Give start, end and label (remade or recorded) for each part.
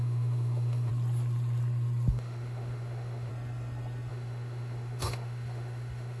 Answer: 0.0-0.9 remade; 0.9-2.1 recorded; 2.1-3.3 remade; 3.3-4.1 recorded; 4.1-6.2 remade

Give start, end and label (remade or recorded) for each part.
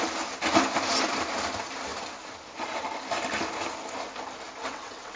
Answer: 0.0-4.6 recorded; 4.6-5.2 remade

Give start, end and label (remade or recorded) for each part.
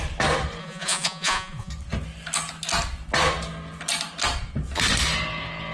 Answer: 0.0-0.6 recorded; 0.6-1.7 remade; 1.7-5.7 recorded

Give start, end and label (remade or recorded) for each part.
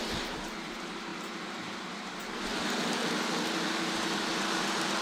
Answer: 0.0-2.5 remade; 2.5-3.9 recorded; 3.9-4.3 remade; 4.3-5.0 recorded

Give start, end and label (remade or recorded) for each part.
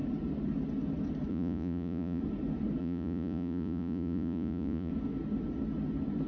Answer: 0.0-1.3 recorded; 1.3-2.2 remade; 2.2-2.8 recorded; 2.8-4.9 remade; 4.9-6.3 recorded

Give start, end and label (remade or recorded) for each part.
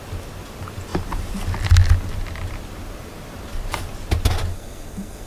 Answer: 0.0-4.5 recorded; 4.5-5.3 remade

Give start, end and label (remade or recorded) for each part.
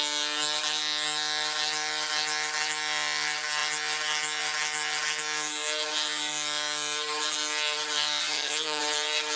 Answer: 0.0-8.2 recorded; 8.2-8.8 remade; 8.8-9.4 recorded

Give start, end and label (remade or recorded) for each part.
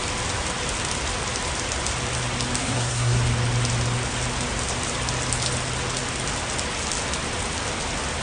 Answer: 0.0-2.6 recorded; 2.6-3.2 remade; 3.2-8.2 recorded